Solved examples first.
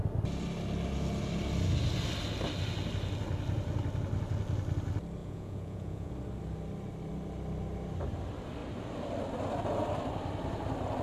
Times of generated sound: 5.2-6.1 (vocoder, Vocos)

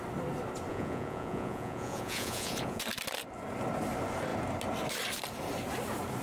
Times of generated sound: 0.7-2.8 (vocoder, Vocos)

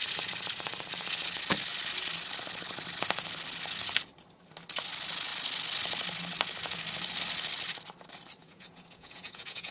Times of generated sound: 8.4-9.7 (vocoder, Vocos)